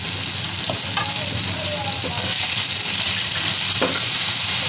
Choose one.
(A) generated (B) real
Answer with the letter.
B